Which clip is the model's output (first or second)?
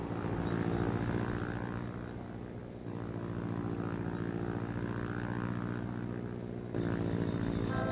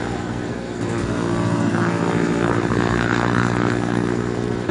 second